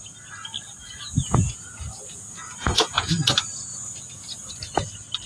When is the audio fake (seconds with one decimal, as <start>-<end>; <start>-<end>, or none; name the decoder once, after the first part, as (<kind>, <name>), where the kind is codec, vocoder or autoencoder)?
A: 0.8-3.2 (vocoder, Vocos); 3.7-4.5